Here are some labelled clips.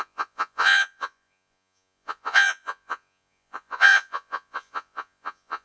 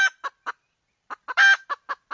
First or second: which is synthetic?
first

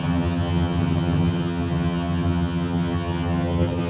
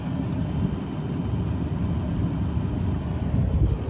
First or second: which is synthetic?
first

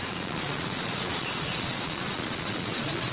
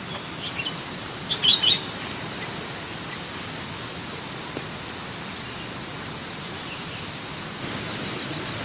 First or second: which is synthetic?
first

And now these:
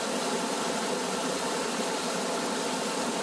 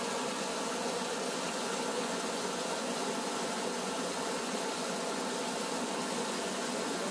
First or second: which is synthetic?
second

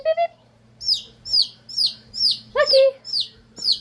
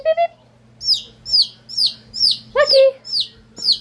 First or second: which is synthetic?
first